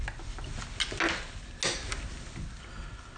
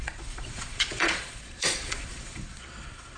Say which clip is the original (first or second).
first